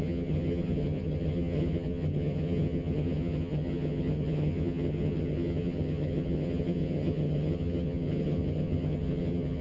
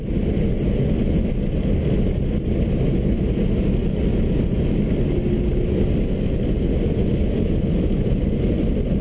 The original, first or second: second